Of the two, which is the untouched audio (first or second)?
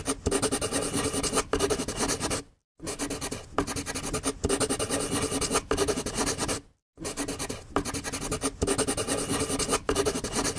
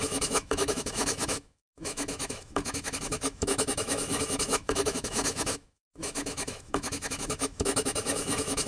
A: first